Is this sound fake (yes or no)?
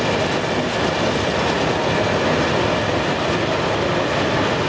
no